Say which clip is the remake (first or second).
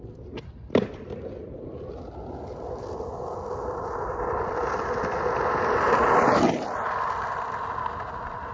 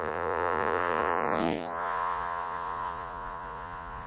second